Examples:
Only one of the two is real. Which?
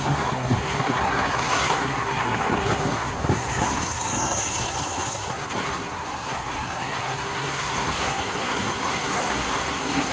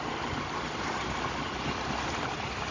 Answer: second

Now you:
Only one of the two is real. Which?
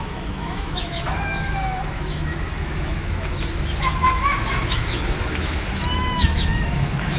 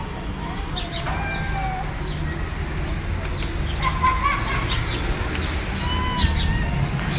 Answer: second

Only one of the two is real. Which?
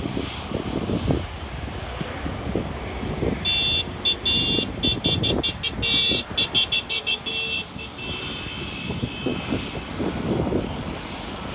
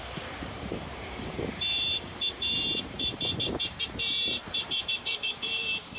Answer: first